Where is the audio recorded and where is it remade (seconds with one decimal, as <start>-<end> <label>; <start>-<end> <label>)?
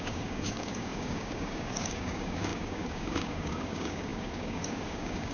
0.0-5.3 remade